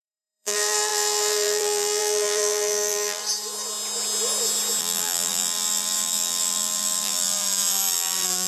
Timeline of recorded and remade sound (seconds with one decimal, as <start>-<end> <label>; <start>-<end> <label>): 0.0-3.2 remade; 3.2-4.8 recorded; 4.8-8.5 remade